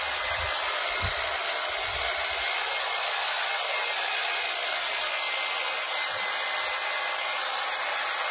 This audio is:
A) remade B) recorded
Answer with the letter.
B